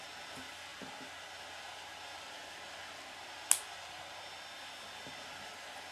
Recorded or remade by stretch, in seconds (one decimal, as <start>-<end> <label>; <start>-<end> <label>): 0.0-5.9 recorded